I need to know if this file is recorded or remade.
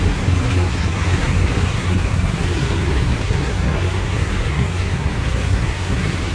remade